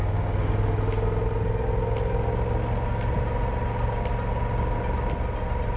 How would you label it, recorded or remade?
recorded